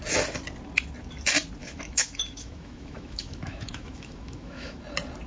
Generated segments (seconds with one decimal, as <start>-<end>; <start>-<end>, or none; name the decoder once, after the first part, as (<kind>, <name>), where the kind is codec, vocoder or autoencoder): 1.6-4.8 (autoencoder, DAC-VAE)